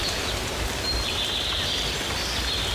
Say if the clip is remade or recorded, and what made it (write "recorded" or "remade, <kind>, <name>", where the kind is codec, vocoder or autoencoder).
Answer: recorded